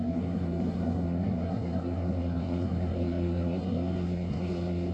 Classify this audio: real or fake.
fake